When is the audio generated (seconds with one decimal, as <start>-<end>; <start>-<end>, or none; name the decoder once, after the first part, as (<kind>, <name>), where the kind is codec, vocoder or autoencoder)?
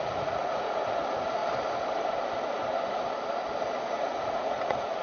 0.0-1.4 (vocoder, Vocos); 3.8-5.0